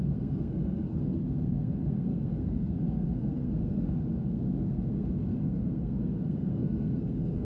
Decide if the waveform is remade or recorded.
remade